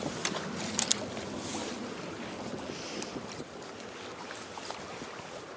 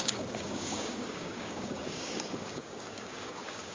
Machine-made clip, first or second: second